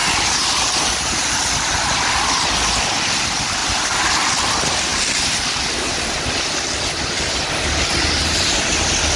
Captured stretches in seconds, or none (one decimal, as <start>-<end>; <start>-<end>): 1.3-9.2